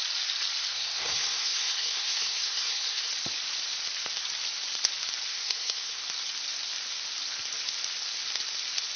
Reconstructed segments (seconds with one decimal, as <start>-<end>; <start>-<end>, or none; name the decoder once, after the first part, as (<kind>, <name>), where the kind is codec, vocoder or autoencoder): 0.7-3.1 (codec, SNAC); 5.3-6.0